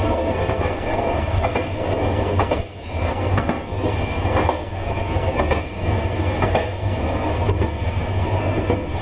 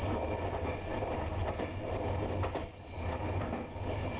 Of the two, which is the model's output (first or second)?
first